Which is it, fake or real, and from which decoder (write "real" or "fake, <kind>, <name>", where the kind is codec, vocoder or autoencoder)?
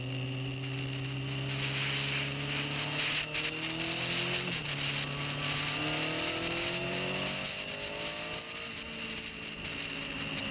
real